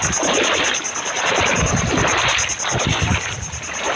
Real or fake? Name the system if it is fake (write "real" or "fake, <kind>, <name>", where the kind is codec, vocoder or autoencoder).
real